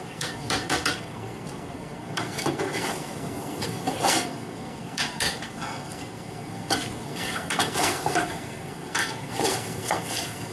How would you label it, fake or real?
fake